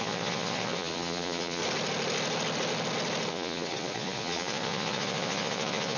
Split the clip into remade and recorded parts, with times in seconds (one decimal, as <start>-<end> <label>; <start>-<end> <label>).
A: 0.0-1.6 remade; 1.6-3.3 recorded; 3.3-6.0 remade